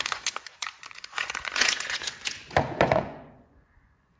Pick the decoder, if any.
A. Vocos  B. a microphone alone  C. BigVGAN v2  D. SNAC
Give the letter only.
A